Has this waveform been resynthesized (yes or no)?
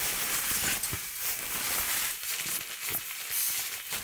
no